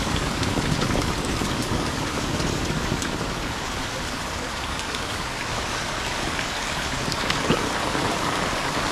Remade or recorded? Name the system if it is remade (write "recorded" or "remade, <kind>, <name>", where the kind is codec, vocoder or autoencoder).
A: remade, codec, DAC